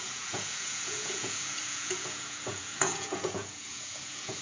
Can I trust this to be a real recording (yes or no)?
no